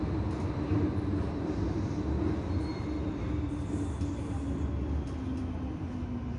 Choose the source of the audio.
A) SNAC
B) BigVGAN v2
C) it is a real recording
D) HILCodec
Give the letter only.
C